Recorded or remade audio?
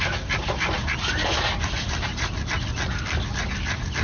recorded